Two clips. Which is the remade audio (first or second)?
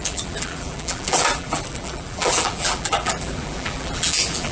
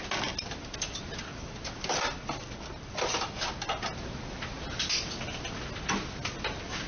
first